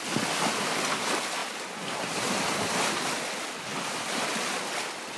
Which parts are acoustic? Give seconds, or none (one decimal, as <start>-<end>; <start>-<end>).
0.0-1.4; 2.9-3.7; 4.7-5.2